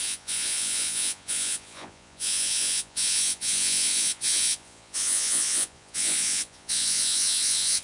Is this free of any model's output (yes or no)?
no